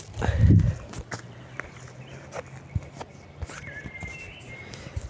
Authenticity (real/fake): real